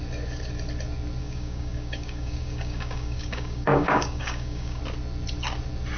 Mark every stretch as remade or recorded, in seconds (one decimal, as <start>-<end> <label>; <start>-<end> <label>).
0.0-1.2 recorded; 1.2-4.8 remade; 4.8-6.0 recorded